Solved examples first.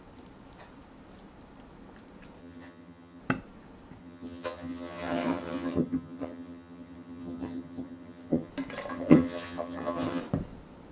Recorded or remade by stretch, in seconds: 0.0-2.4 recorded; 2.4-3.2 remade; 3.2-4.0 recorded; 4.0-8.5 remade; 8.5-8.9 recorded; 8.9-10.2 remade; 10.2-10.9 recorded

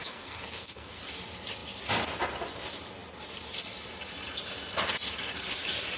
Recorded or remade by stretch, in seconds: 0.0-1.0 remade; 1.0-6.0 recorded

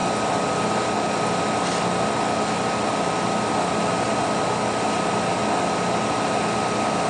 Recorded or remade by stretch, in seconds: 0.0-7.1 recorded

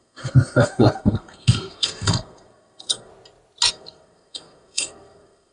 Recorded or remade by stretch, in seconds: 0.0-3.1 remade; 3.1-3.7 recorded; 3.7-5.5 remade

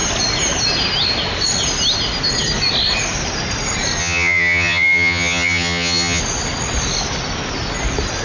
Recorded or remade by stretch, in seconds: 0.0-4.0 recorded; 4.0-6.2 remade; 6.2-8.2 recorded

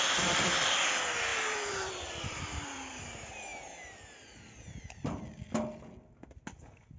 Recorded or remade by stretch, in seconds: 0.0-3.5 remade; 3.5-7.0 recorded

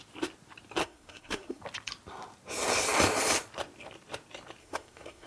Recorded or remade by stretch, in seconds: 0.0-0.8 recorded; 0.8-1.6 remade; 1.6-4.6 recorded; 4.6-5.3 remade

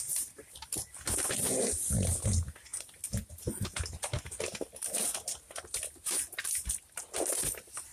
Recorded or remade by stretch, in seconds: 0.0-7.9 recorded